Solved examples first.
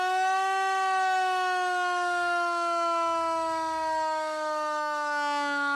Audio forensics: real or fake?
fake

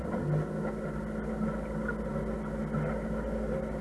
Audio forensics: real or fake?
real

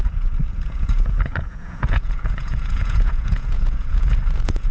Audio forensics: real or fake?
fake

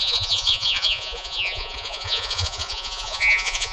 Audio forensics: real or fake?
fake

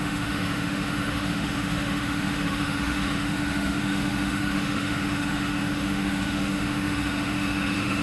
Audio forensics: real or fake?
fake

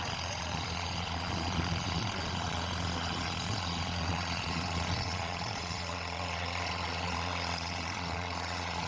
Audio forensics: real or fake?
fake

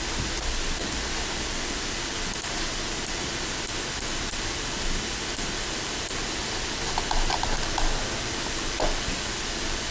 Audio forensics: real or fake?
real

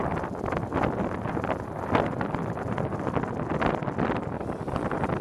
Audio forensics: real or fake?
real